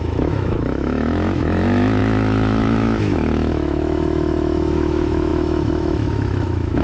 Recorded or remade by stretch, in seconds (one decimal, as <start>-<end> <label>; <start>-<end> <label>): 0.0-6.8 remade